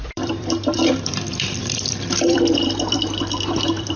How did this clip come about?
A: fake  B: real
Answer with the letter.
A